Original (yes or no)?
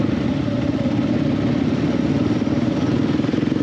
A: no